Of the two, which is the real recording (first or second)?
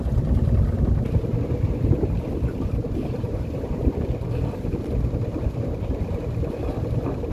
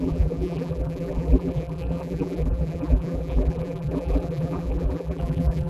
first